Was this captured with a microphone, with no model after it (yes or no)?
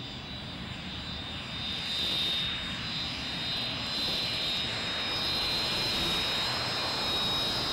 yes